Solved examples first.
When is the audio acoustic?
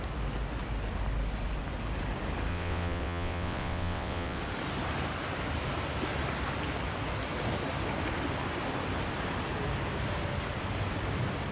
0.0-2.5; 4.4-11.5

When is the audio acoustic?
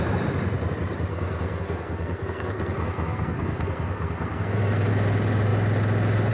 0.0-1.1; 4.9-6.3